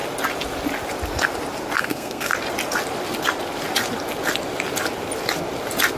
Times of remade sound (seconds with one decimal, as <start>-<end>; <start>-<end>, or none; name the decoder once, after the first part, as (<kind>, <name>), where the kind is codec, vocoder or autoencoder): 1.8-2.3 (codec, SNAC)